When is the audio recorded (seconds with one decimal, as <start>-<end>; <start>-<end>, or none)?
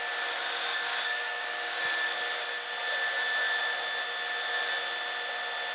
0.0-0.7; 1.8-5.7